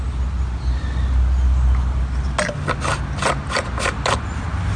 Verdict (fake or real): real